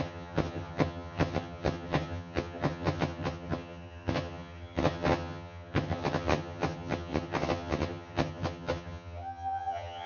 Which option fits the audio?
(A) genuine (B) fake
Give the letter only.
B